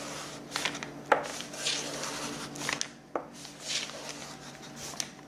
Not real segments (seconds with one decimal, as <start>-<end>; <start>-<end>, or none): none